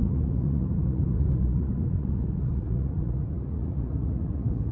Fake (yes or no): yes